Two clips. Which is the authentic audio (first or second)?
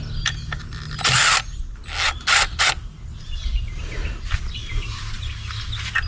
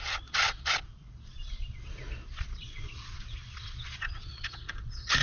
first